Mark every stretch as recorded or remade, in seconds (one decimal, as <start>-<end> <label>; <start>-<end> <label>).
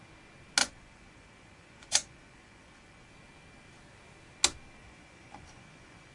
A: 0.0-0.6 recorded; 0.6-3.1 remade; 3.1-4.8 recorded; 4.8-6.1 remade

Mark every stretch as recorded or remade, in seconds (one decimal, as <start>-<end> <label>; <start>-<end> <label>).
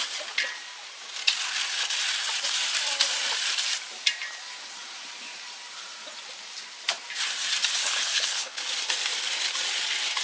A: 0.0-7.8 recorded; 7.8-8.7 remade; 8.7-10.2 recorded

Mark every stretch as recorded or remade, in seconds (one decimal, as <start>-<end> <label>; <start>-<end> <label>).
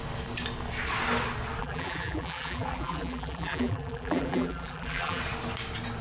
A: 0.0-1.6 recorded; 1.6-5.2 remade; 5.2-6.0 recorded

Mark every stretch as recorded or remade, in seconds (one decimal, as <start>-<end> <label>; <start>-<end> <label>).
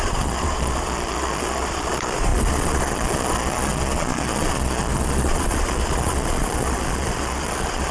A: 0.0-7.9 remade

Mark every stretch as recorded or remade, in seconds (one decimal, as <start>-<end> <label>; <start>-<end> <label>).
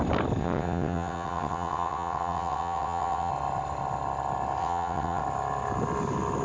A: 0.0-0.4 recorded; 0.4-3.3 remade; 3.3-4.6 recorded; 4.6-5.2 remade; 5.2-6.4 recorded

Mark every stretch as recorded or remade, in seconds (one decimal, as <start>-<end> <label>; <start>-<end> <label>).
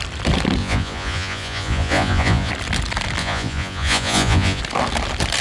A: 0.0-0.6 recorded; 0.6-2.5 remade; 2.5-3.2 recorded; 3.2-4.6 remade; 4.6-5.4 recorded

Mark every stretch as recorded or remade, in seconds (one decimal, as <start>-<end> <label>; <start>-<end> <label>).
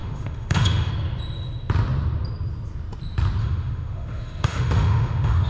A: 0.0-0.9 remade; 0.9-3.4 recorded; 3.4-5.5 remade